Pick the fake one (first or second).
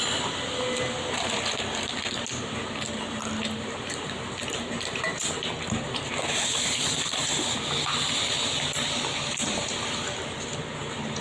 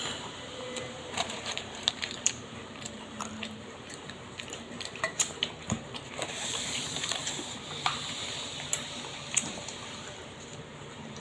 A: second